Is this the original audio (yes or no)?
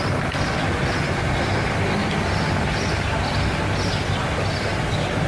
yes